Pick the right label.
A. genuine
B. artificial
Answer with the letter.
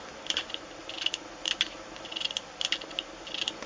A